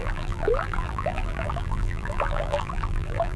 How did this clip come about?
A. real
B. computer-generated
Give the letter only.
B